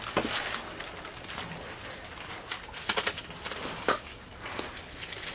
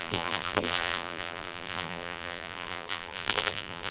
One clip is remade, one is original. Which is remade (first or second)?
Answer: second